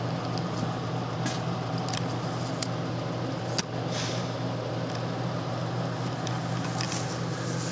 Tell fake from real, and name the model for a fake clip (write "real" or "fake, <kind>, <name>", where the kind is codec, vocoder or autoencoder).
real